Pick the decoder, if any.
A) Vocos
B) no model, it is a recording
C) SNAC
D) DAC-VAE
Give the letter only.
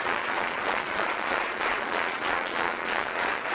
A